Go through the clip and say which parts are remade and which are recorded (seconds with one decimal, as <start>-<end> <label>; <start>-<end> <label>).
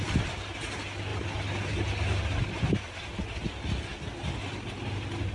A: 0.0-5.3 recorded